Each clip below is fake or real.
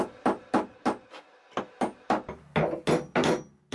real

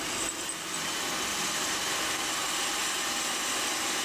real